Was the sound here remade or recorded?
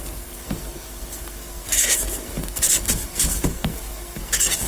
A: remade